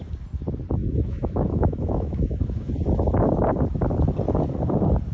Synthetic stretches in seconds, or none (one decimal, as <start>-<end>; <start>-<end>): 0.8-2.7